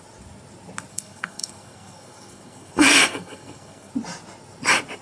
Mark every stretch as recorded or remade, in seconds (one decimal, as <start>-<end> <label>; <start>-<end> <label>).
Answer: 0.0-0.9 recorded; 0.9-3.9 remade; 3.9-5.0 recorded